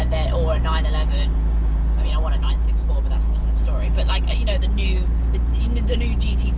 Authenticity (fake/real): real